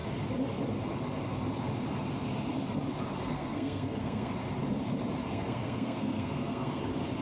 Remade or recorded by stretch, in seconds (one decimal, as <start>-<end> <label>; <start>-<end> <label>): 0.0-3.3 recorded; 3.3-4.3 remade; 4.3-5.3 recorded; 5.3-6.8 remade; 6.8-7.2 recorded